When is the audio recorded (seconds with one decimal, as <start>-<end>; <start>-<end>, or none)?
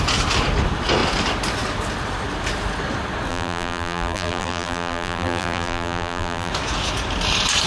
0.0-3.3; 6.5-7.7